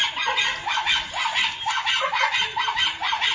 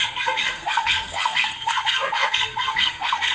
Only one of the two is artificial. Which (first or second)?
second